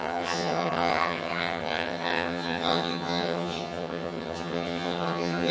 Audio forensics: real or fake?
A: fake